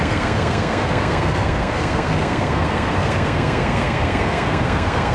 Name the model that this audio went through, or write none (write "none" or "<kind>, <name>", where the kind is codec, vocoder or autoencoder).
codec, SNAC